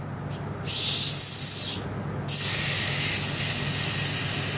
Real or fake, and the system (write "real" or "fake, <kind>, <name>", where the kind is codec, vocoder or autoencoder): real